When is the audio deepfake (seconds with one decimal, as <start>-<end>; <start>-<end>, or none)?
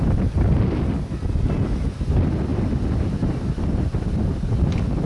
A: none